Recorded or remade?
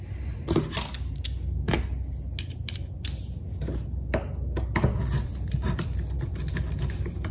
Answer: recorded